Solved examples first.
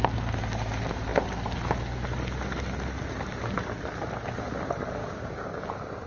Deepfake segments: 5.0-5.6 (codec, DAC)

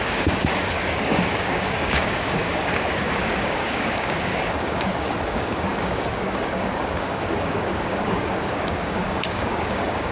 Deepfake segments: 0.0-10.1 (codec, DAC)

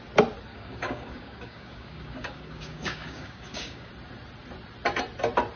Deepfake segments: 0.5-3.9 (codec, DAC)

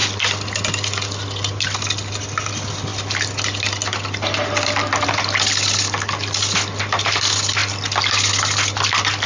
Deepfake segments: none

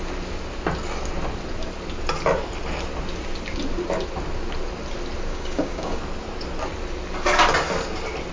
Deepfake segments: 5.3-6.0 (codec, DAC)